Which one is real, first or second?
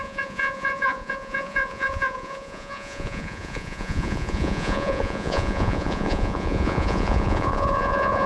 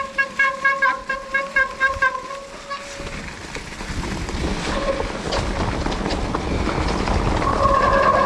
second